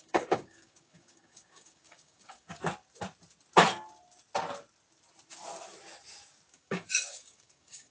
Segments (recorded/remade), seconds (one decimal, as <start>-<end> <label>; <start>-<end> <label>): 0.0-2.6 remade; 2.6-6.5 recorded; 6.5-7.9 remade